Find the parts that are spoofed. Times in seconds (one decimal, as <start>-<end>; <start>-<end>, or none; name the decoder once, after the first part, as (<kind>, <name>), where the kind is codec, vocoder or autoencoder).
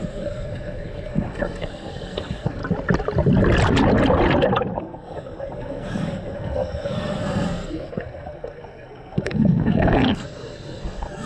0.0-2.6 (codec, SNAC); 4.8-11.3